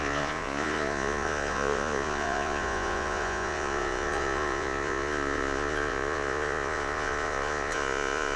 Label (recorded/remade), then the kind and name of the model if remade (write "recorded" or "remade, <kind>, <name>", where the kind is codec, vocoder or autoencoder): remade, vocoder, Vocos